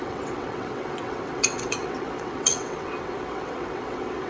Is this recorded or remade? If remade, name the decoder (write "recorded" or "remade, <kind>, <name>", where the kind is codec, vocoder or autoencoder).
remade, vocoder, WaveNeXt